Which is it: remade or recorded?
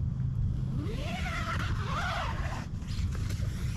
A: recorded